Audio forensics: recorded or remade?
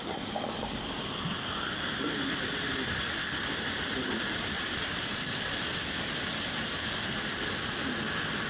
recorded